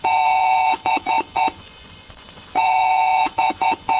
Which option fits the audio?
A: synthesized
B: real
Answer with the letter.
A